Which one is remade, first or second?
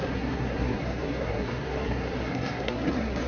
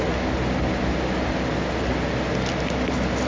first